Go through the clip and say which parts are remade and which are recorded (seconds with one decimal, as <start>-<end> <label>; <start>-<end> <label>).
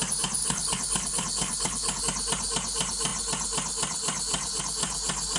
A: 0.0-0.4 recorded; 0.4-2.0 remade; 2.0-5.4 recorded